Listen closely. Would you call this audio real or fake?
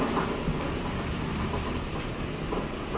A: real